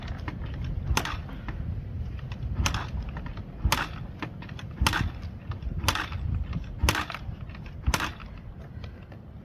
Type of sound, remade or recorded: recorded